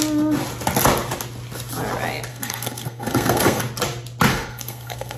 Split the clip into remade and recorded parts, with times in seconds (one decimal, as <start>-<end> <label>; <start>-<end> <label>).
0.0-2.3 recorded; 2.3-3.6 remade; 3.6-4.3 recorded; 4.3-5.2 remade